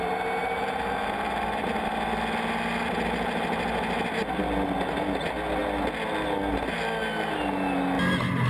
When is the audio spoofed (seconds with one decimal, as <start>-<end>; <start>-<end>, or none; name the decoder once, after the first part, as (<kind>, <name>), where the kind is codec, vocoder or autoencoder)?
0.4-1.9 (vocoder, BigVGAN v2)